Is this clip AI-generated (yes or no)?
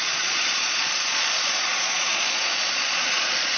yes